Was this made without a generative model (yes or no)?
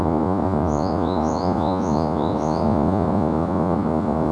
no